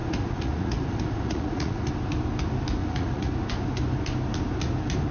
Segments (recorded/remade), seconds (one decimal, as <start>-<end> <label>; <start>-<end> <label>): 0.0-1.9 remade; 1.9-2.8 recorded; 2.8-3.3 remade; 3.3-5.1 recorded